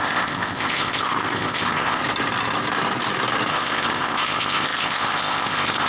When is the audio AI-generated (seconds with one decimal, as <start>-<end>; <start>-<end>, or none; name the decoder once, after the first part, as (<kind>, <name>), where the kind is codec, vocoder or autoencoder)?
0.0-2.0 (codec, ZipCodec); 3.5-5.9